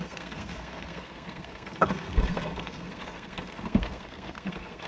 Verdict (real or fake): fake